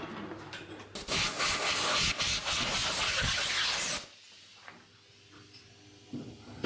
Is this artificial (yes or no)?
no